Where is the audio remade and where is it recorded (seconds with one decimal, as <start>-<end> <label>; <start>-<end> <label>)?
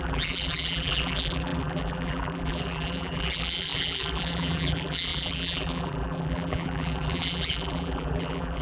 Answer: 0.0-8.6 remade